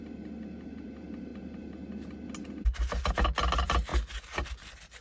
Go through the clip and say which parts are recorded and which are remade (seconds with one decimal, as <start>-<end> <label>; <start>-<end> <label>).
0.0-5.0 recorded